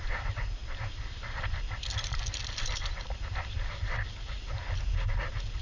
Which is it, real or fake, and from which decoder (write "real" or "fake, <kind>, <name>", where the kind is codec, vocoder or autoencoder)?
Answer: real